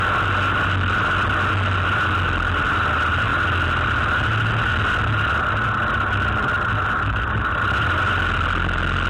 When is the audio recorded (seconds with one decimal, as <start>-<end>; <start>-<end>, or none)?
0.0-9.1